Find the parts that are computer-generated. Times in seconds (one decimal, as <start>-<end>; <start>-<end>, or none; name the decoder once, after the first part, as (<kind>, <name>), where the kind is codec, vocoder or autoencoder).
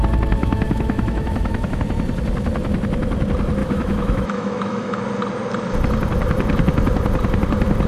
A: 0.4-1.8 (autoencoder, DAC-VAE); 3.6-5.0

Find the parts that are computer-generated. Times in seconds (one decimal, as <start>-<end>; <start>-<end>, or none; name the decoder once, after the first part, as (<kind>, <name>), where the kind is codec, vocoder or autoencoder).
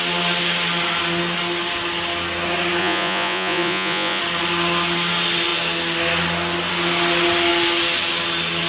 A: 2.8-4.2 (vocoder, Vocos)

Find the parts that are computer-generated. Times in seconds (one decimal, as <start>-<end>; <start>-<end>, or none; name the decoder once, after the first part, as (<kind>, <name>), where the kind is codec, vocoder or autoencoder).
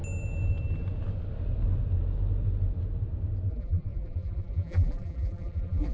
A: 3.5-5.9 (vocoder, BigVGAN v2)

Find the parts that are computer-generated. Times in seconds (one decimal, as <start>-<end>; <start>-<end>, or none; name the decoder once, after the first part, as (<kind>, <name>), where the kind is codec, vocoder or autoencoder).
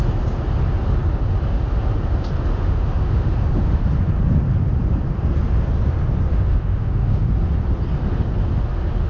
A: 2.5-3.8 (autoencoder, DAC-VAE); 6.3-7.3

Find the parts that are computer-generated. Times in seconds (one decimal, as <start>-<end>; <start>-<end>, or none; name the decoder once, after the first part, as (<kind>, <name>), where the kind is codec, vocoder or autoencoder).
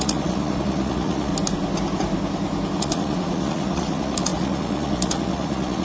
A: 0.0-1.3 (vocoder, Vocos); 2.8-5.8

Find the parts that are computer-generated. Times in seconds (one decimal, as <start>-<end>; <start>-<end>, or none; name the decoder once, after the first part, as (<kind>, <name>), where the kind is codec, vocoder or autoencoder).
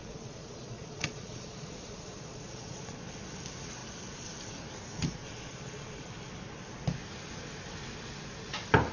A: 0.0-3.0 (vocoder, Vocos); 5.2-6.1